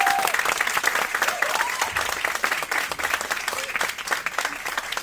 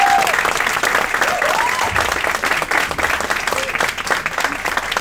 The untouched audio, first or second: second